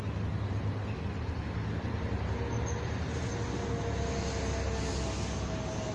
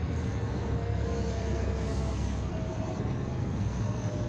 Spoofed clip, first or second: second